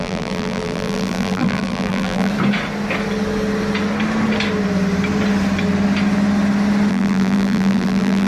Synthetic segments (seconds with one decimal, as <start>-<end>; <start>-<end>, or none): 0.0-2.3; 6.9-8.3